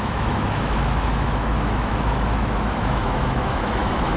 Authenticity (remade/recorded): remade